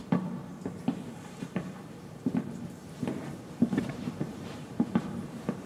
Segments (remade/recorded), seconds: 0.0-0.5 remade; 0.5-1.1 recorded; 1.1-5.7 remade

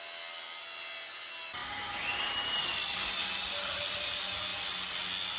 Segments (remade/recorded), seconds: 0.0-5.4 recorded

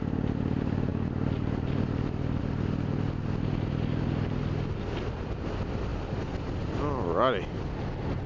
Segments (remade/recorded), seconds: 0.0-8.3 recorded

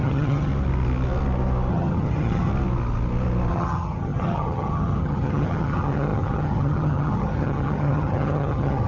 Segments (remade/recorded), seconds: 0.0-0.5 remade; 0.5-1.7 recorded; 1.7-2.5 remade; 2.5-3.5 recorded; 3.5-8.9 remade

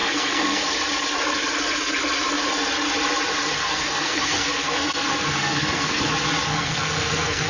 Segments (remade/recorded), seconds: 0.0-0.7 remade; 0.7-3.6 recorded; 3.6-6.1 remade; 6.1-6.5 recorded; 6.5-7.5 remade